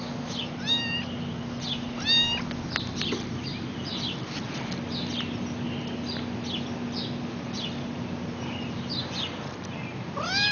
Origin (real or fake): real